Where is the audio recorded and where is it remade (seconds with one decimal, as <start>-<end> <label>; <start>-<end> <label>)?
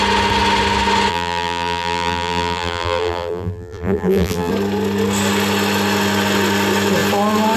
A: 0.0-1.1 recorded; 1.1-4.5 remade; 4.5-7.6 recorded